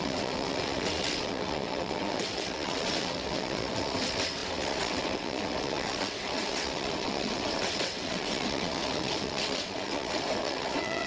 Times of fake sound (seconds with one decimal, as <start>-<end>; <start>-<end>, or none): 0.0-11.1